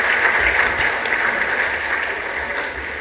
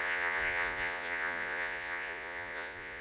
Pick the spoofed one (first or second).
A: second